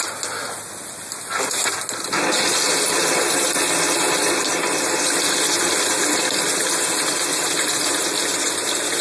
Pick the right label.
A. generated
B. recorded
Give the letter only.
B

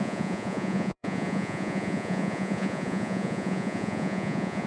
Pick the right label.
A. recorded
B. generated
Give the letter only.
B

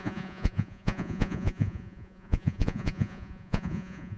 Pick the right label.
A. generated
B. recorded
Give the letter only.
A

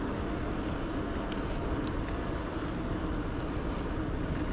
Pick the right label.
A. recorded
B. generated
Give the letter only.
A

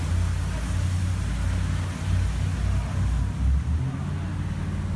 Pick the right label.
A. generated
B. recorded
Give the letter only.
B